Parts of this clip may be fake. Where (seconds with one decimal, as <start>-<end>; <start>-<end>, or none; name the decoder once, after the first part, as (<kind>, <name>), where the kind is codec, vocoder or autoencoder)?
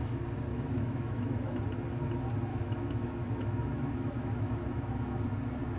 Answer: 0.5-1.6 (autoencoder, DAC-VAE); 2.5-5.2